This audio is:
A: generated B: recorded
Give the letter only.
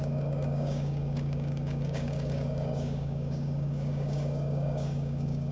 A